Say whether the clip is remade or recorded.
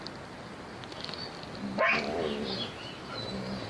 recorded